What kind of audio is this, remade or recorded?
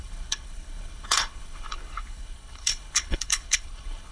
remade